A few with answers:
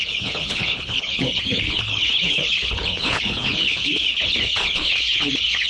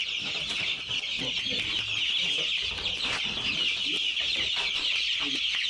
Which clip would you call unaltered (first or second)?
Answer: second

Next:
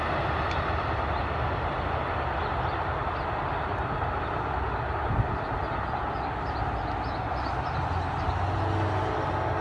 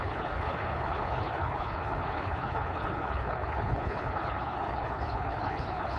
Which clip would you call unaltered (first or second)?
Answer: first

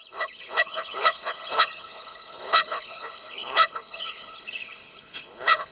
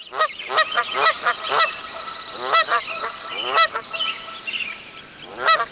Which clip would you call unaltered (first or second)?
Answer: second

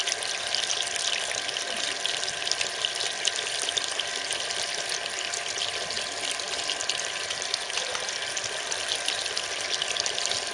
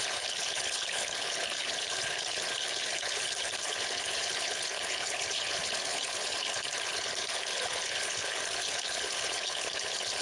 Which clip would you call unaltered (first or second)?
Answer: first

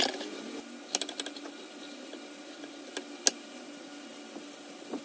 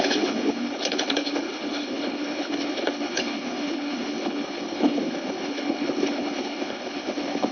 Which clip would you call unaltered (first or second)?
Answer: first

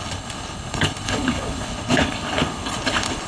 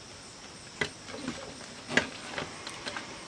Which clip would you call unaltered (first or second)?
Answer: second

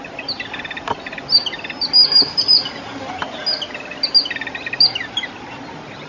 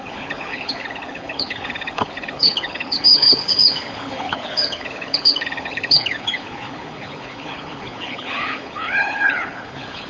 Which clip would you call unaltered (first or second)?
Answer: first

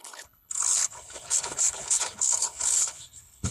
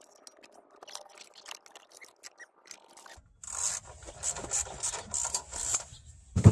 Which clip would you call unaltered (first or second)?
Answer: second